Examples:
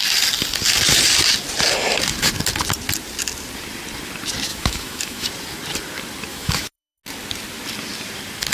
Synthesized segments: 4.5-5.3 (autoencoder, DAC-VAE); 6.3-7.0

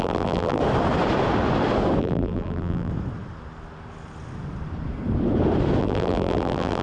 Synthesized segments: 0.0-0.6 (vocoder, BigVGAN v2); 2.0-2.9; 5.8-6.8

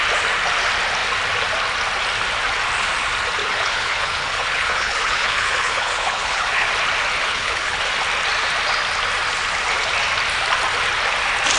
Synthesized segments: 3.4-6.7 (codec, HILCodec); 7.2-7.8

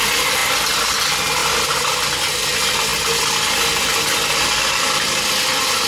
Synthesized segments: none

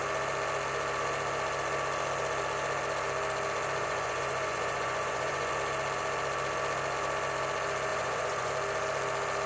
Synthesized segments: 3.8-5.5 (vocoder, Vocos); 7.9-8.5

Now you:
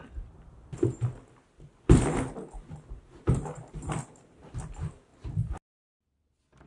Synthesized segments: none